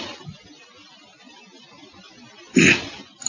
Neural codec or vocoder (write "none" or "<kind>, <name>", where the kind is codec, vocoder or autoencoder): vocoder, BigVGAN v2